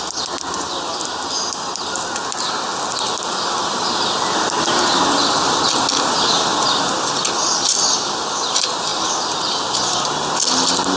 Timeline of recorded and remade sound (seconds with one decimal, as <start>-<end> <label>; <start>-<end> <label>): 0.0-11.0 recorded